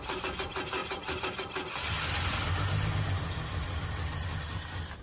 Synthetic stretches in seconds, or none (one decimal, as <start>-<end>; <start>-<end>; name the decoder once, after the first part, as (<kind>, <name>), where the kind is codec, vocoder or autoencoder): none